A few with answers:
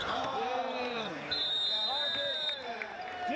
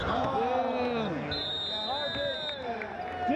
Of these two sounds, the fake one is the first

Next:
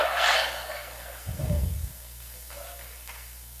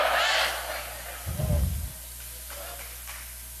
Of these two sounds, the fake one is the first